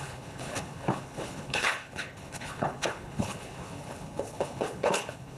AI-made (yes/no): yes